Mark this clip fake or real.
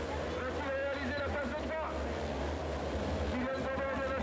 real